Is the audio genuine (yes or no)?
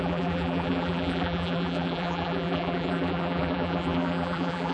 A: no